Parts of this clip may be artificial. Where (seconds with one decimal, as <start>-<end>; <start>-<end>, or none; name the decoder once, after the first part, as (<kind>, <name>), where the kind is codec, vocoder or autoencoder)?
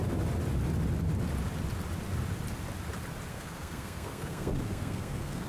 3.3-5.5 (codec, SNAC)